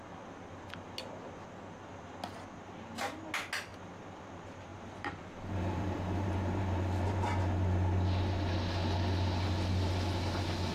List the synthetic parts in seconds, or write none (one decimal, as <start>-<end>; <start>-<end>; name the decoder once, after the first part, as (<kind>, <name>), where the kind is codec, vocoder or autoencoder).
4.7-7.4 (vocoder, BigVGAN v2)